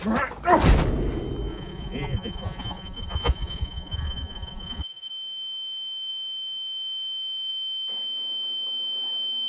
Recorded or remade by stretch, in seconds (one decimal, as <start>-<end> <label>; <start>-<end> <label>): 0.0-1.5 recorded; 1.5-5.1 remade; 5.1-9.5 recorded